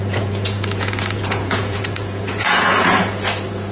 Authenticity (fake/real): fake